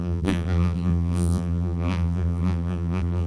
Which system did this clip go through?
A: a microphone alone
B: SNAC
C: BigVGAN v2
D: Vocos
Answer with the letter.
C